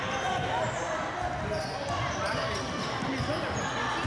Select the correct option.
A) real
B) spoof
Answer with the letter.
A